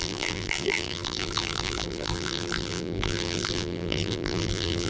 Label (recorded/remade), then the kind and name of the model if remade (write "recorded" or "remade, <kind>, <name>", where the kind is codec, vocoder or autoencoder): remade, vocoder, BigVGAN v2